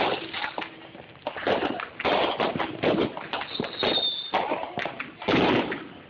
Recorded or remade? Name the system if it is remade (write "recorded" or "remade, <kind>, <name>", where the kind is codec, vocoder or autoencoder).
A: recorded